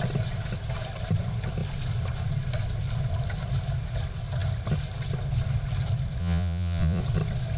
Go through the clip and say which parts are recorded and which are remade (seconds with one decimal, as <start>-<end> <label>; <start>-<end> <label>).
0.0-6.2 recorded; 6.2-7.0 remade; 7.0-7.6 recorded